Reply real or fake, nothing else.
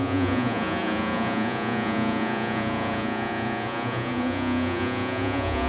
fake